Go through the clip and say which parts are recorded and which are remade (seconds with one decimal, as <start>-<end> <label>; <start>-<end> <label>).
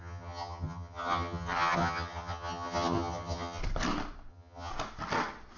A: 0.0-3.6 remade; 3.6-4.3 recorded; 4.3-4.7 remade; 4.7-5.6 recorded